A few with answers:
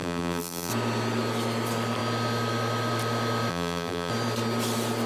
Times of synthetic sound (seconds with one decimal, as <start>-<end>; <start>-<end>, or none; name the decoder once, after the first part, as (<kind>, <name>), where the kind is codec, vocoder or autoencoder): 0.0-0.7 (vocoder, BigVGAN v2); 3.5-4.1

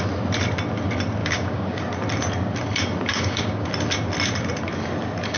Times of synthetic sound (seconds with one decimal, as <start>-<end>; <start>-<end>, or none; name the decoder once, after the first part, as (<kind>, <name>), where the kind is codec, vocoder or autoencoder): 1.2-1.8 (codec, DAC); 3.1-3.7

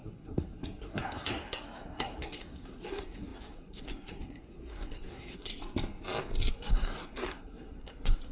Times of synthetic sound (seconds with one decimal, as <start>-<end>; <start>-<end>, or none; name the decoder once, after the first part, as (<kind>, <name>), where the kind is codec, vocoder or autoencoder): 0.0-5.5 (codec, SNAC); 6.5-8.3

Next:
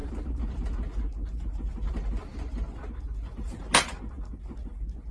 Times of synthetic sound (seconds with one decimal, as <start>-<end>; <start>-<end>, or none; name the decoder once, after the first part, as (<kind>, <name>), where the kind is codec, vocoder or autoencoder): none

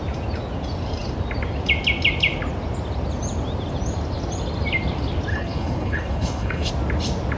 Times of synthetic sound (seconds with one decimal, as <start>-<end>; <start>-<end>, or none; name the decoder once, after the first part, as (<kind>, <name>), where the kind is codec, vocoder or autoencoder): 5.3-6.7 (codec, HILCodec)

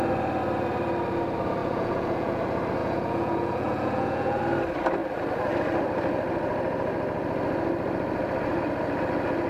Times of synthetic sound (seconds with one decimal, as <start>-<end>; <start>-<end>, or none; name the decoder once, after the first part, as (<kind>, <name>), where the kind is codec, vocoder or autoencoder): 1.6-2.4 (vocoder, Vocos); 2.8-4.4

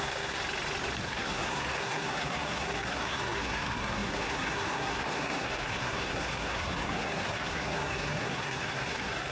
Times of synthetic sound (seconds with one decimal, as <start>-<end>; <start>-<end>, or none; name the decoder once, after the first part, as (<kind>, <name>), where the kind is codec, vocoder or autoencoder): 0.0-0.4 (codec, SNAC); 1.0-9.3

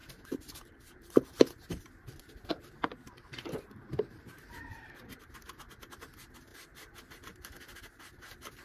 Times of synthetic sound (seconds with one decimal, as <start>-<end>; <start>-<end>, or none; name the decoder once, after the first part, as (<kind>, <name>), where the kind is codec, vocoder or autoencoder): 0.0-5.2 (vocoder, BigVGAN v2); 6.5-7.0